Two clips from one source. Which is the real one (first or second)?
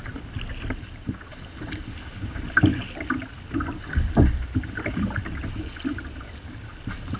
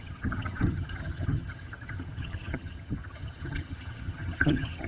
first